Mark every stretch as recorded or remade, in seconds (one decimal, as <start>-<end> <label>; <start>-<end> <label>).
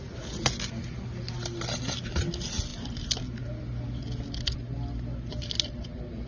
0.0-6.3 recorded